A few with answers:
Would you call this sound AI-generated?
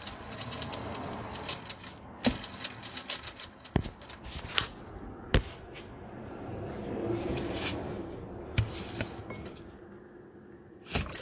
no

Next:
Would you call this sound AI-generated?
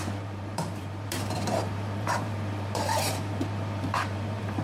yes